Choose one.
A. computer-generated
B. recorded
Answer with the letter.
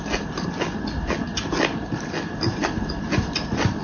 B